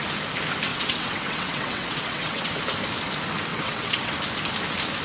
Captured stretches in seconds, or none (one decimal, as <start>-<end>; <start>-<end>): 0.0-0.7; 2.6-3.5; 4.1-5.0